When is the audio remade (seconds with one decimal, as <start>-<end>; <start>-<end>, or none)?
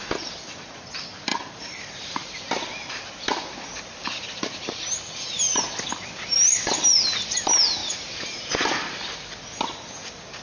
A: 1.3-2.4